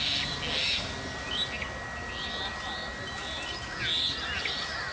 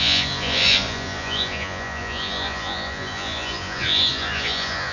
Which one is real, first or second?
first